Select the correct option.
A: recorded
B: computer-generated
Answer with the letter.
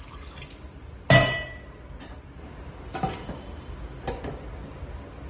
A